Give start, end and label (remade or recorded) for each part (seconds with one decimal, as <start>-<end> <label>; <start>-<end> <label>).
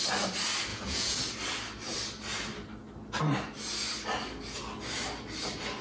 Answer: 0.0-0.7 recorded; 0.7-1.2 remade; 1.2-5.8 recorded